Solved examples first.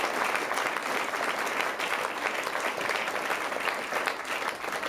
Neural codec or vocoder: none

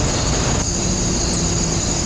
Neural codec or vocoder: none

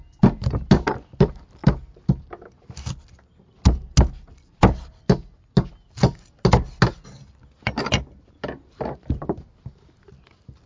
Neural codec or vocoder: none